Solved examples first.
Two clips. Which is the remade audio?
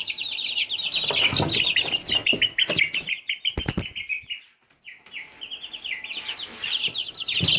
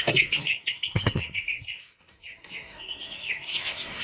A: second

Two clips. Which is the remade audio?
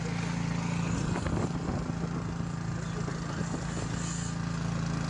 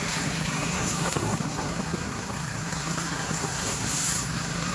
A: second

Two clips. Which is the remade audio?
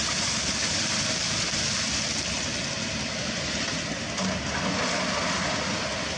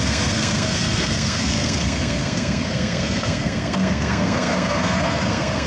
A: second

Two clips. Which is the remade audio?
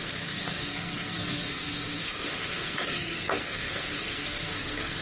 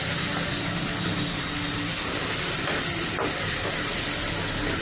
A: first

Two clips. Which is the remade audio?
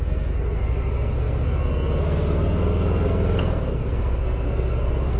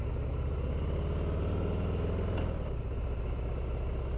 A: first